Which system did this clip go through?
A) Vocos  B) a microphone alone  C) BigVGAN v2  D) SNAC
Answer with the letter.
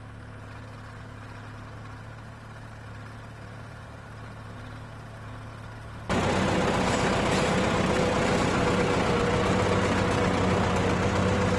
B